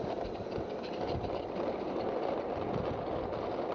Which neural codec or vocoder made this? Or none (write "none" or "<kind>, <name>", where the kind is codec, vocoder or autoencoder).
none